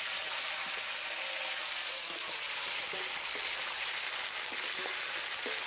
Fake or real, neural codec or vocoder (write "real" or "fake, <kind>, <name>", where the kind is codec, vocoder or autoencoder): real